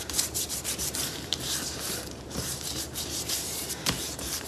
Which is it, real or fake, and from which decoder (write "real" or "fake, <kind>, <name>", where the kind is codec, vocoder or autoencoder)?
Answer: fake, vocoder, BigVGAN v2